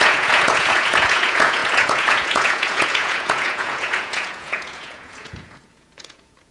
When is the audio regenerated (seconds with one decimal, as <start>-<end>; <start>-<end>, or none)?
0.0-6.5

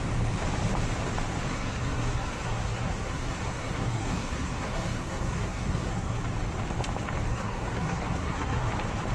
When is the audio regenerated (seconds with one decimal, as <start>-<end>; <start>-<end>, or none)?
1.5-6.2; 7.3-8.7

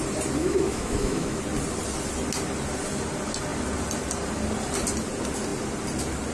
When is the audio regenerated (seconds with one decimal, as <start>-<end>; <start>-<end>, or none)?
0.4-1.4

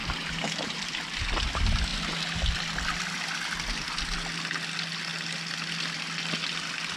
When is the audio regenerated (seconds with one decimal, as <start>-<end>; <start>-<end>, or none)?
0.0-1.2